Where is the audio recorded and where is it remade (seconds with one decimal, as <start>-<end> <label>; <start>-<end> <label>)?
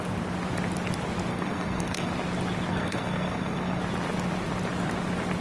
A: 0.0-1.3 recorded; 1.3-2.1 remade; 2.1-2.7 recorded; 2.7-3.8 remade; 3.8-5.4 recorded